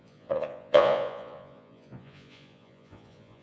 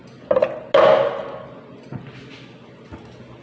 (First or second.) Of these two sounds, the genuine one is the second